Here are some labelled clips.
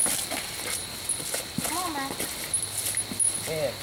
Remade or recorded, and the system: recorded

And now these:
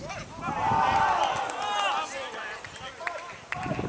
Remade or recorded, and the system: recorded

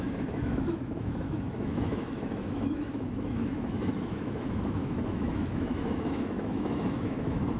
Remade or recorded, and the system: remade, autoencoder, DAC-VAE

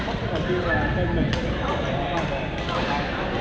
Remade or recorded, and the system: recorded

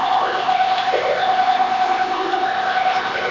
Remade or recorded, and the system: remade, codec, ZipCodec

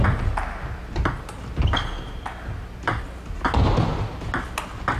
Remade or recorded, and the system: recorded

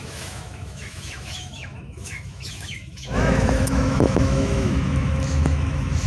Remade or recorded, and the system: remade, autoencoder, DAC-VAE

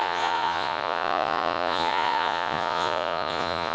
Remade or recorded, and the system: remade, vocoder, Vocos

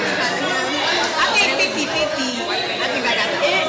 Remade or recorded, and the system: recorded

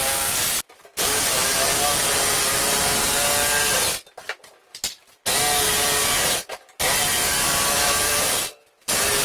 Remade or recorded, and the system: recorded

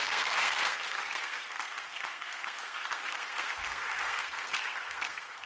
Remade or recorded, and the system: remade, codec, SNAC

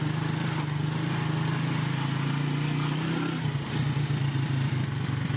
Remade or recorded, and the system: recorded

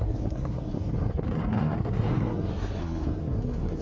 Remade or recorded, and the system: remade, codec, SNAC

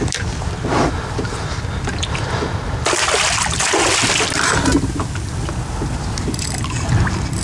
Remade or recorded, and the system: recorded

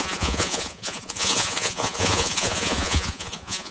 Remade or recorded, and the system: remade, vocoder, Vocos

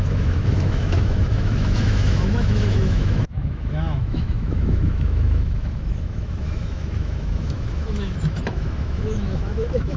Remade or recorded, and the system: remade, autoencoder, DAC-VAE